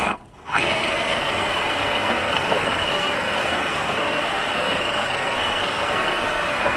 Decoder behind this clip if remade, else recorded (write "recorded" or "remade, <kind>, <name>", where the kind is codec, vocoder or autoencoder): remade, codec, SNAC